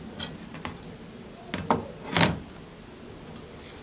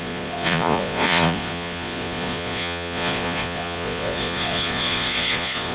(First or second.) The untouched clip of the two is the first